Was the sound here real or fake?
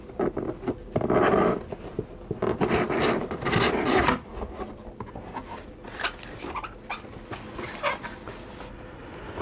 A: real